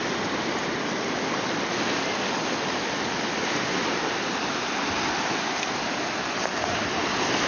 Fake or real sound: real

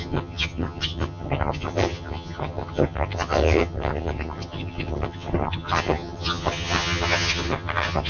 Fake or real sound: fake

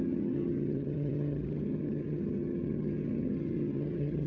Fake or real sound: fake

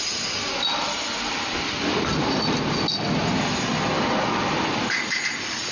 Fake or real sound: real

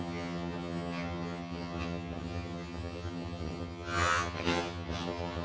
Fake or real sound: fake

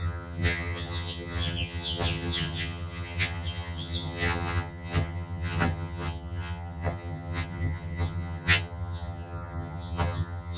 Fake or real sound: fake